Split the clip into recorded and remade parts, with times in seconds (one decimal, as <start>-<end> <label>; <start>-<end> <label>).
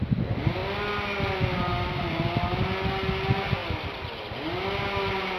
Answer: 0.0-5.4 recorded